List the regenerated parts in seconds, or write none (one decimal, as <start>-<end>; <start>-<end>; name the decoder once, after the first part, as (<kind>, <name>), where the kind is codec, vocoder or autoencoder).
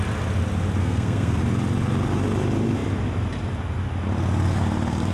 0.8-1.4 (codec, SNAC)